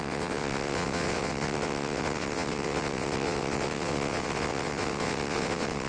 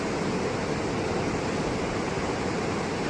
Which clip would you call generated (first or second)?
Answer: first